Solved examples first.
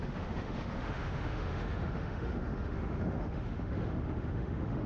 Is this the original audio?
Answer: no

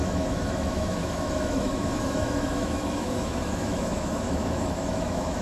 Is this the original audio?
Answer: no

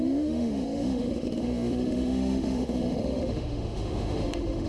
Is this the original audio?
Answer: no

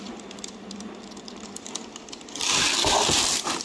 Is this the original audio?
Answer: yes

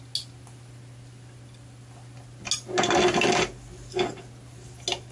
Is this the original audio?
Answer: yes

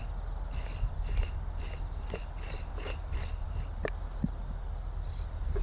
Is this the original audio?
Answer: yes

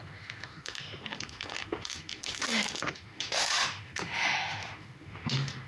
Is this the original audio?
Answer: no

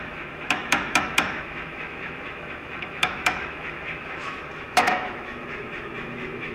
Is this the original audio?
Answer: no